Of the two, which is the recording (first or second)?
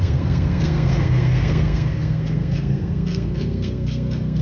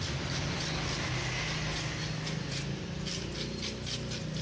second